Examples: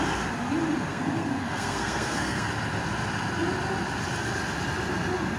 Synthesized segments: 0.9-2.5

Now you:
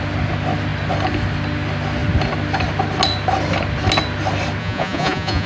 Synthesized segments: 4.6-5.5